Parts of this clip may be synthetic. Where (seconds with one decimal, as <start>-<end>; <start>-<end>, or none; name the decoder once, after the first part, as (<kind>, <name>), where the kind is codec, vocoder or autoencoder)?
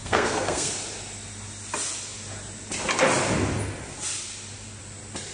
0.0-0.7 (codec, SNAC)